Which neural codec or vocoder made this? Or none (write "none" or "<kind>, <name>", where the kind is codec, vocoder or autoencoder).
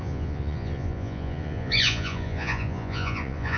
vocoder, Vocos